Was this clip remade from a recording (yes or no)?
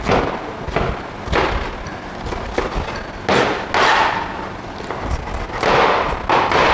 no